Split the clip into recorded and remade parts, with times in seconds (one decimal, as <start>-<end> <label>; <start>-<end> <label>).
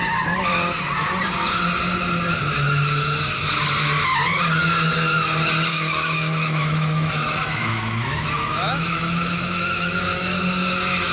0.0-5.7 recorded; 5.7-10.4 remade; 10.4-11.1 recorded